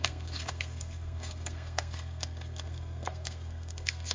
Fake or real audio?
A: fake